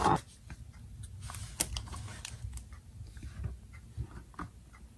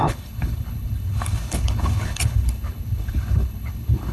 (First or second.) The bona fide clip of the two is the first